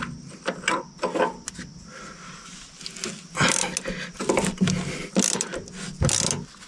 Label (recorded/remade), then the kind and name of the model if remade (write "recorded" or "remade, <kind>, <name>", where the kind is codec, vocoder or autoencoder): recorded